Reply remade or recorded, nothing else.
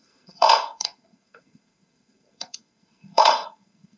remade